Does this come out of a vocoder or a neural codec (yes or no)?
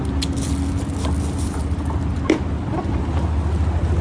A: no